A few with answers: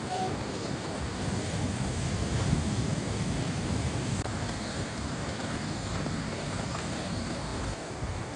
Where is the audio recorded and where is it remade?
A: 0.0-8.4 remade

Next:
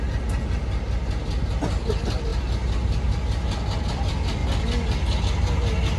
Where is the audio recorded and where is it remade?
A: 0.0-6.0 recorded

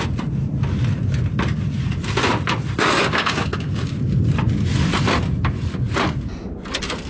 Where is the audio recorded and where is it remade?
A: 0.0-3.2 recorded; 3.2-4.1 remade; 4.1-7.1 recorded

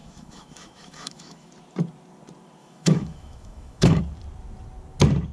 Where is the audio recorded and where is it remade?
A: 0.0-1.5 remade; 1.5-2.6 recorded; 2.6-4.0 remade; 4.0-5.3 recorded

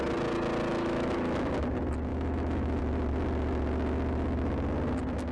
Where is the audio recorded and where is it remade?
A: 0.0-0.7 recorded; 0.7-1.5 remade; 1.5-2.1 recorded; 2.1-2.8 remade; 2.8-5.3 recorded

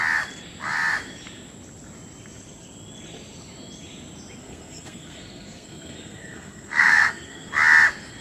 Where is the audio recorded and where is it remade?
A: 0.0-4.4 recorded; 4.4-7.5 remade; 7.5-8.2 recorded